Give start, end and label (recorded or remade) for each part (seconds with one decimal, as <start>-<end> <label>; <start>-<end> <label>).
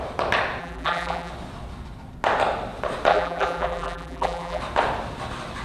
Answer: 0.0-0.6 recorded; 0.6-1.3 remade; 1.3-3.1 recorded; 3.1-4.6 remade; 4.6-5.6 recorded